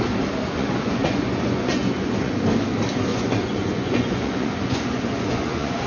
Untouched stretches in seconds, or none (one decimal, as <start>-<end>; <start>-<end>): 0.0-0.4; 2.3-3.1